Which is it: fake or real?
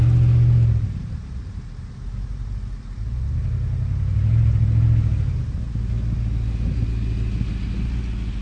real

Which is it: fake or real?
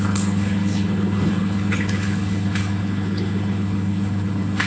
fake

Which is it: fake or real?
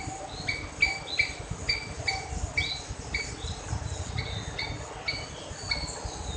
real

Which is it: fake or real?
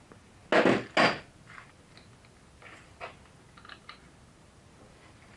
real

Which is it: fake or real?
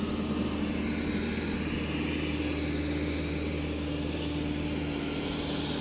real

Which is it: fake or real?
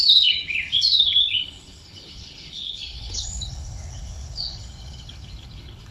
fake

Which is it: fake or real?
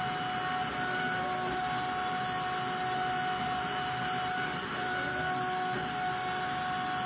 real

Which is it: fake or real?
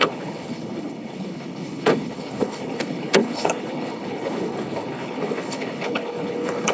fake